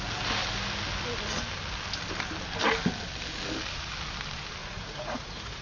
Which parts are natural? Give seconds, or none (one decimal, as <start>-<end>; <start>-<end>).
0.0-4.6